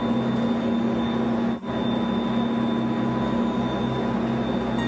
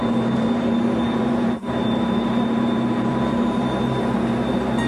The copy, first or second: second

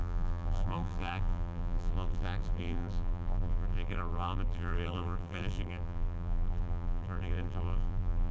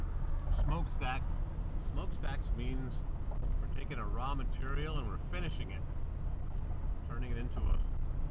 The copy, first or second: first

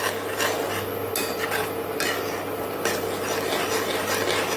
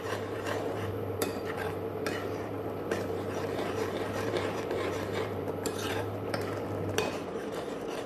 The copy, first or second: second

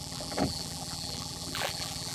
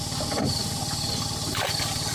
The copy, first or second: first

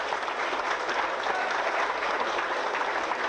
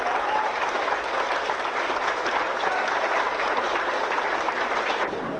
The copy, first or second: second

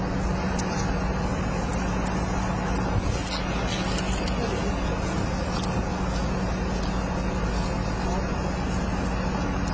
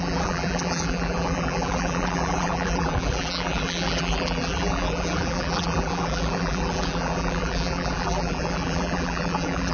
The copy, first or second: second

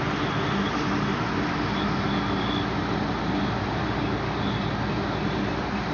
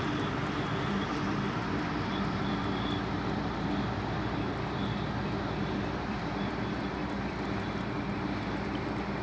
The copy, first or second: second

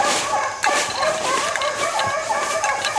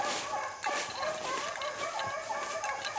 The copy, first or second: first